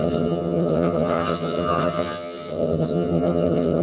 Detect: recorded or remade remade